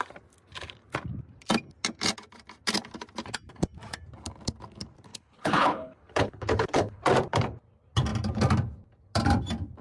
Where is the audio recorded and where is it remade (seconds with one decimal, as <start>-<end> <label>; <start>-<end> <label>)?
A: 0.0-5.1 recorded; 5.1-7.0 remade; 7.0-9.8 recorded